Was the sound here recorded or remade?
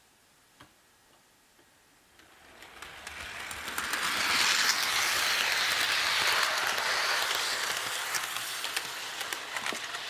recorded